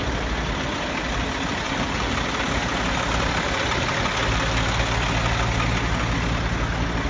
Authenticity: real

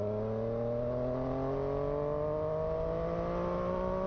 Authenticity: real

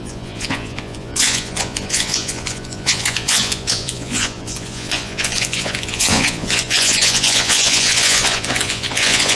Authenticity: fake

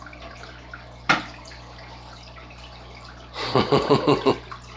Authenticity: real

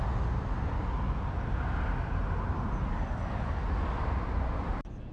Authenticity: real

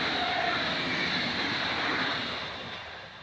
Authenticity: real